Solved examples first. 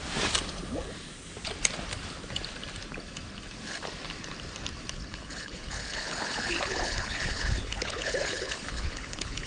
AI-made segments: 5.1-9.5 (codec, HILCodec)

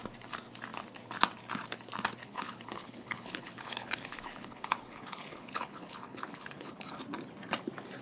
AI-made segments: 2.2-7.0 (codec, HILCodec)

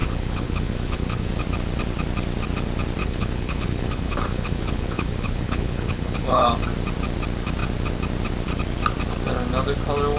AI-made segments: 0.0-1.3 (codec, HILCodec); 3.0-6.5

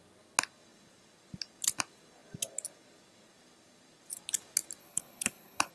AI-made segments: 4.8-5.7 (codec, HILCodec)

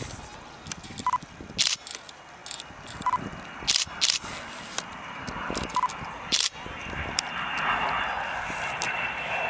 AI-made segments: none

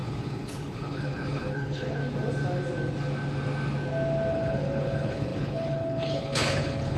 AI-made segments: 0.0-2.0 (codec, HILCodec); 4.3-7.0

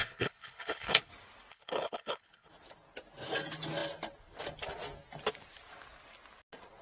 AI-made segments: 0.0-1.1 (codec, HILCodec); 1.5-2.5

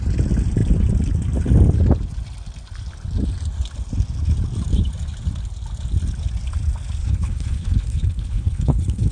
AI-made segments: 7.0-9.1 (codec, HILCodec)